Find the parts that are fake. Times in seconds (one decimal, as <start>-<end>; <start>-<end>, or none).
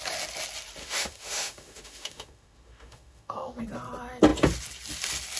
0.8-3.6